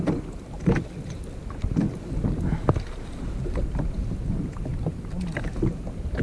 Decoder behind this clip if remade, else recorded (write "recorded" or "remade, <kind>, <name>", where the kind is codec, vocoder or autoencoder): recorded